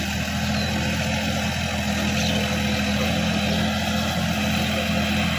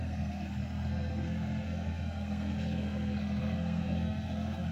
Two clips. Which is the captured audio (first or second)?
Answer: first